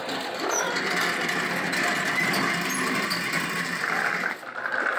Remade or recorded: remade